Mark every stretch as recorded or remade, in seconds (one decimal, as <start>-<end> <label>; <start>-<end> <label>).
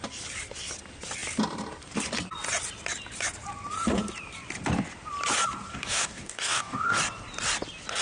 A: 0.0-5.7 recorded; 5.7-7.0 remade; 7.0-8.0 recorded